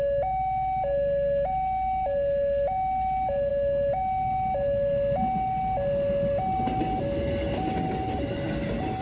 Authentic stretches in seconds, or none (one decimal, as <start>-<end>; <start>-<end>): 0.0-9.0